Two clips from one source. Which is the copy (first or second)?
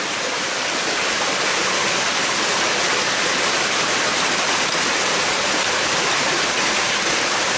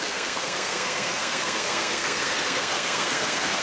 second